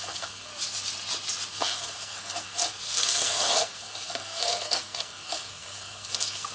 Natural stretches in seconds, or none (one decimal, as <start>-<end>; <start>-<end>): 0.5-1.5